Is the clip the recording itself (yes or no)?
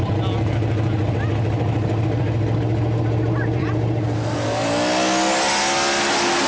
yes